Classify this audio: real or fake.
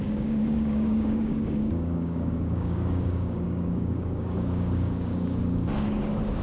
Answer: fake